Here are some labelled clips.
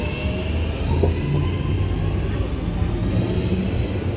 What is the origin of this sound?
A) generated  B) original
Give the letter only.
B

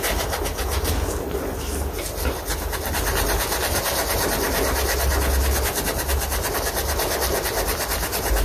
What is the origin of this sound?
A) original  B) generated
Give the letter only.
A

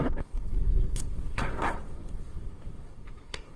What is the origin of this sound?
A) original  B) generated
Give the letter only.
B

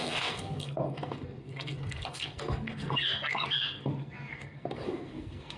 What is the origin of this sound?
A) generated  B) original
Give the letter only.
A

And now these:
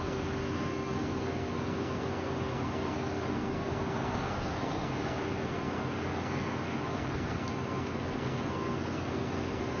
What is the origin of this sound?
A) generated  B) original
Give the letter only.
A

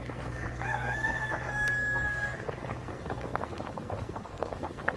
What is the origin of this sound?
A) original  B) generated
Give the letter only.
B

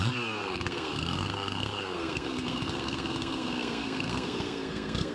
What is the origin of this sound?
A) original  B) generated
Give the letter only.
B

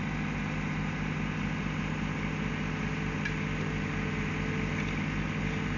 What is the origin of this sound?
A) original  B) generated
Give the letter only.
A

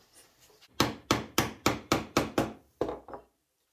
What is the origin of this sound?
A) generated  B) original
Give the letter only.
B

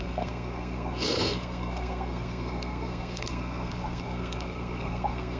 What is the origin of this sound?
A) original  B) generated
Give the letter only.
B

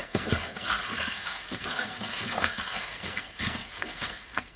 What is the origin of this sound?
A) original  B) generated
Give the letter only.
B